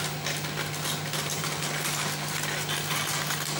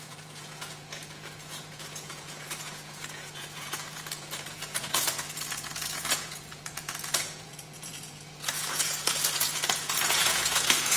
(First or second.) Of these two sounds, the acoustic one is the first